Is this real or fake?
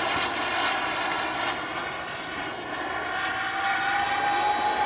real